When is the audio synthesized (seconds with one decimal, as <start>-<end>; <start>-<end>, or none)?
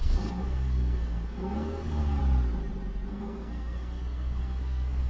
0.0-2.2; 3.1-5.1